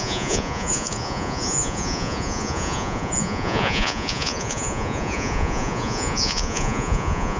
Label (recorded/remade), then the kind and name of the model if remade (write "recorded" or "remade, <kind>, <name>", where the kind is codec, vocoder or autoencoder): remade, vocoder, Vocos